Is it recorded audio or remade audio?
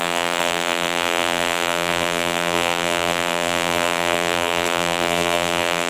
remade